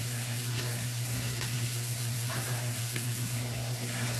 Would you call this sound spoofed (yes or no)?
yes